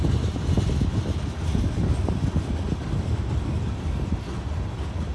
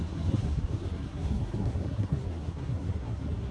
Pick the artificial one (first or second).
second